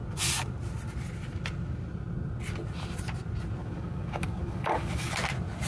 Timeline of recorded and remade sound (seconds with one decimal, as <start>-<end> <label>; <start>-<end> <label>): 0.0-3.6 recorded; 3.6-5.1 remade; 5.1-5.7 recorded